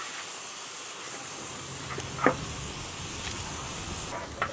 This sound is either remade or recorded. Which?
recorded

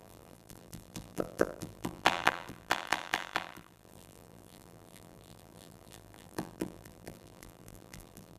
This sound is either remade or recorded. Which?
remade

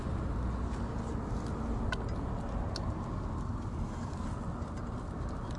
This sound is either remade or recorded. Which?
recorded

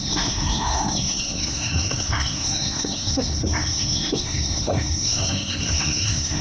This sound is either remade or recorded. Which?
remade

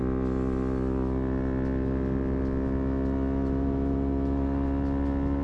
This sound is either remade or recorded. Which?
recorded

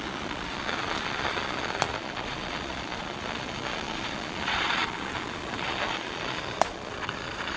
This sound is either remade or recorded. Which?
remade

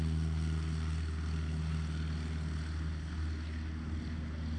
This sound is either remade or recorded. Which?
recorded